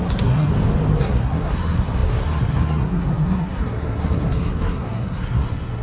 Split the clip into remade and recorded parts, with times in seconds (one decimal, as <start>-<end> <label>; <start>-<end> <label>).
0.0-0.5 remade; 0.5-1.0 recorded; 1.0-5.8 remade